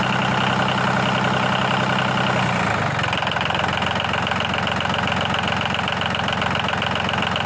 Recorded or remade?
recorded